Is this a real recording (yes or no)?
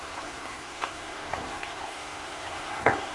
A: no